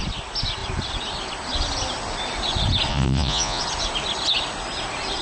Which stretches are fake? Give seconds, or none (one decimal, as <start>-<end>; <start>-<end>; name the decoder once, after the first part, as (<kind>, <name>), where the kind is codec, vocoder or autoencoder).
2.9-3.6 (vocoder, Vocos)